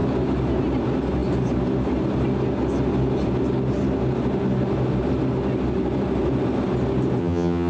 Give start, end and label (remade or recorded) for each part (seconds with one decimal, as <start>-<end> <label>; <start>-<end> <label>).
0.0-7.2 recorded; 7.2-7.7 remade